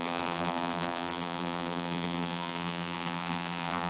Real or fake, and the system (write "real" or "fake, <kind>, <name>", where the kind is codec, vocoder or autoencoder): fake, vocoder, BigVGAN v2